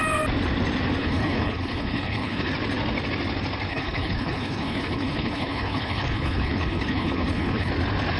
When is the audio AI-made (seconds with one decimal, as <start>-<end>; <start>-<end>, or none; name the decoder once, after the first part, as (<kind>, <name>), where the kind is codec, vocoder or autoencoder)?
1.0-2.5 (codec, HILCodec); 3.7-7.7